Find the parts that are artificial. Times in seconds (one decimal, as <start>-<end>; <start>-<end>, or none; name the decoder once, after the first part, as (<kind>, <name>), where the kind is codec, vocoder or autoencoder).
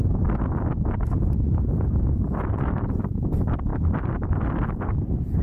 2.2-5.4 (vocoder, BigVGAN v2)